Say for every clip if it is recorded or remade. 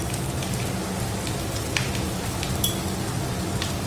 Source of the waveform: recorded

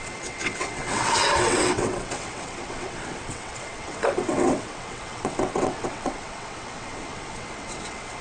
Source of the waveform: remade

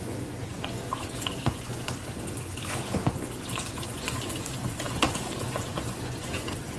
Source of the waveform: remade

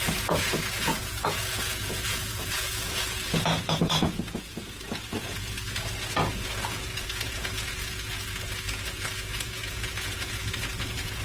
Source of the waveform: remade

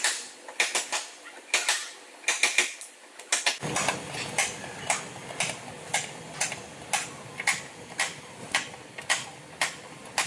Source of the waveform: recorded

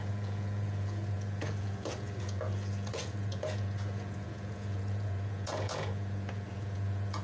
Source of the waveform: remade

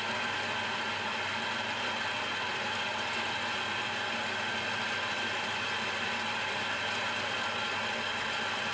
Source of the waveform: recorded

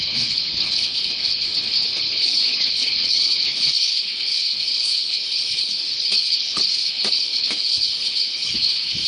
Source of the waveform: remade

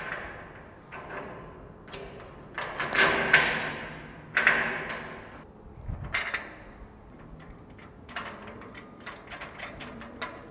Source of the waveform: recorded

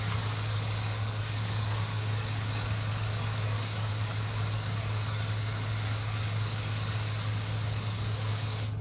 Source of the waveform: remade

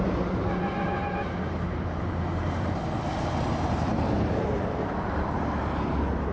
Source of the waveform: remade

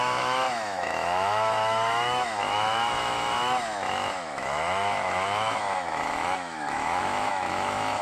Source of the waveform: remade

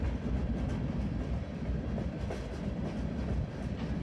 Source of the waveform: recorded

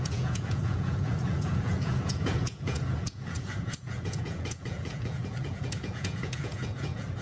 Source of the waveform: remade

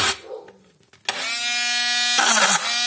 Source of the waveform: recorded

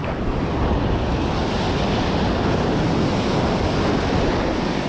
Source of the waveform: recorded